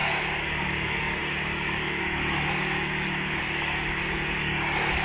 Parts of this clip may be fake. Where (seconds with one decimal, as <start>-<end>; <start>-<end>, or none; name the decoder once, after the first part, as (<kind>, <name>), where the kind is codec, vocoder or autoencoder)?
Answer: 0.0-5.0 (codec, DAC)